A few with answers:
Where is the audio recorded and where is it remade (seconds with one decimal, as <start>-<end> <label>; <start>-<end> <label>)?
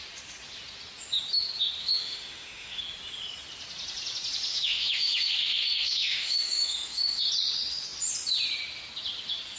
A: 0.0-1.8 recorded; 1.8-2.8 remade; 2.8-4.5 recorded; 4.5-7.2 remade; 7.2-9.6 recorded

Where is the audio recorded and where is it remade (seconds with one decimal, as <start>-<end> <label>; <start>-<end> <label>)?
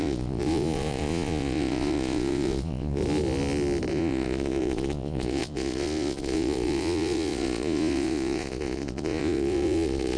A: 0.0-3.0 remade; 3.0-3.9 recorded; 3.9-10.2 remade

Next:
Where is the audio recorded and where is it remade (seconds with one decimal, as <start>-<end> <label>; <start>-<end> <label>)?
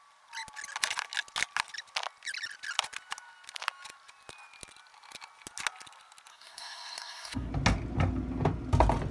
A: 0.0-6.3 recorded; 6.3-7.5 remade; 7.5-9.1 recorded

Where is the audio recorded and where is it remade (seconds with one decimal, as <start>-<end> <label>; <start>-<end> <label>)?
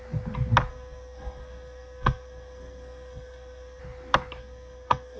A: 0.0-0.7 recorded; 0.7-3.8 remade; 3.8-4.4 recorded; 4.4-5.2 remade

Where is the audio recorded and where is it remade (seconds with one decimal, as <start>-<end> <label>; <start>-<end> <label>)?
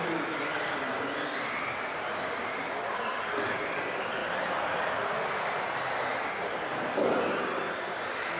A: 0.0-8.4 recorded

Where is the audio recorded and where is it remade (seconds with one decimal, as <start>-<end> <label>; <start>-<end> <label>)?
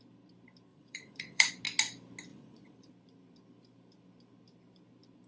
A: 0.0-0.7 recorded; 0.7-1.5 remade; 1.5-2.3 recorded; 2.3-2.9 remade; 2.9-5.3 recorded